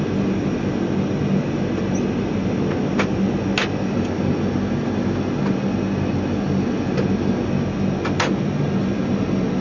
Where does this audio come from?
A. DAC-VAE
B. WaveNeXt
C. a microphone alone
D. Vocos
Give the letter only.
C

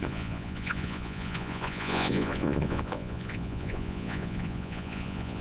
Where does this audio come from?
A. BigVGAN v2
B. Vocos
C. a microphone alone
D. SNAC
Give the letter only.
B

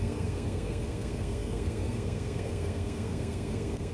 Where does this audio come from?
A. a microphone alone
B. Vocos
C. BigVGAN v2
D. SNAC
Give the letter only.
D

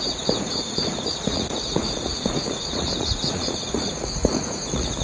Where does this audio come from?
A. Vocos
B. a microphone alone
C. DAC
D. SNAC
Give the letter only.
A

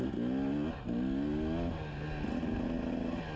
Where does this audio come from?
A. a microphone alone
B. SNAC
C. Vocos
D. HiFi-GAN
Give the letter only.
A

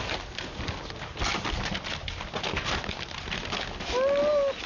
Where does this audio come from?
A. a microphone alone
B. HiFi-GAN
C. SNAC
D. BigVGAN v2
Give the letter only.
A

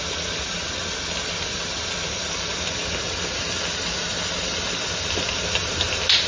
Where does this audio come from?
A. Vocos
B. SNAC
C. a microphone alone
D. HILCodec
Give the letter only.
C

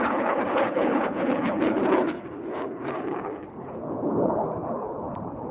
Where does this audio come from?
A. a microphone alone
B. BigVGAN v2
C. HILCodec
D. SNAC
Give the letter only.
C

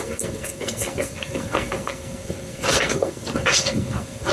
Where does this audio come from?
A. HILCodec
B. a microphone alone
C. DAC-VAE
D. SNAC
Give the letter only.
D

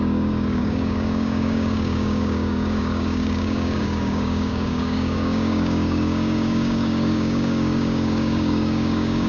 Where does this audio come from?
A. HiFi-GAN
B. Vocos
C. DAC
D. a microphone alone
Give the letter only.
C